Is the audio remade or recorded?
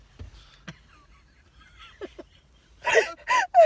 recorded